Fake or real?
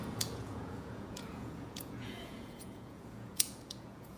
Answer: fake